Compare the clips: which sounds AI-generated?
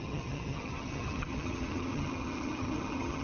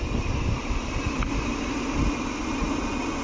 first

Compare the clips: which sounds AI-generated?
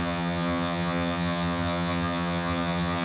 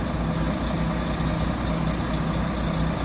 first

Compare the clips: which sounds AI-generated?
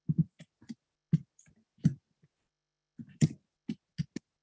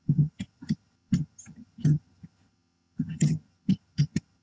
second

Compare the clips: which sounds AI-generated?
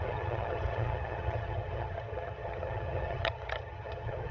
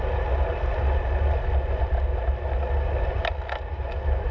first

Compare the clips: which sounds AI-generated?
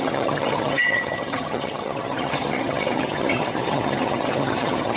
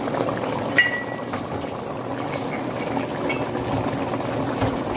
first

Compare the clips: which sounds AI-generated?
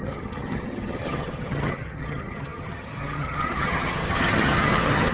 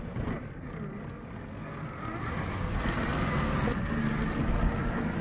first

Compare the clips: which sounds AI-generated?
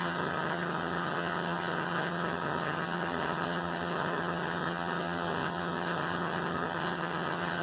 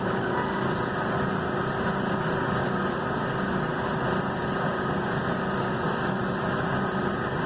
first